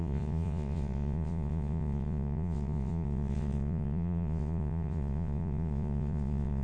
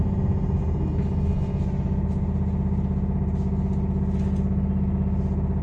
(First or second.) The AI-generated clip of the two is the first